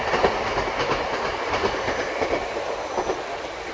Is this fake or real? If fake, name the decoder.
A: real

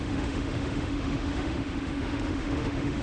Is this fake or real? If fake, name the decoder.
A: fake, autoencoder, DAC-VAE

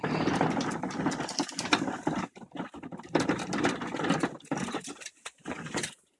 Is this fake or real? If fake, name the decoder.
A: real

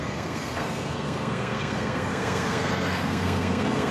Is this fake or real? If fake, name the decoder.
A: fake, codec, SNAC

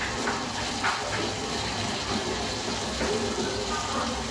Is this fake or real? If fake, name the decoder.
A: real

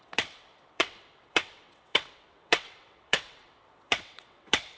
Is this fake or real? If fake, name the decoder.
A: fake, vocoder, WaveNeXt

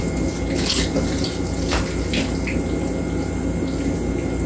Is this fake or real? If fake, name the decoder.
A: real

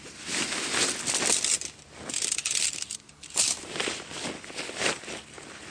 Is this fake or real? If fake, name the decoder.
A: real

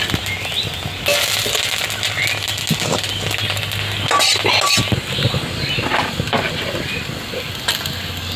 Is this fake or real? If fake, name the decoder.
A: real